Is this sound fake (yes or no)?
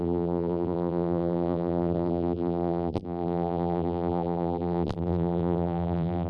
yes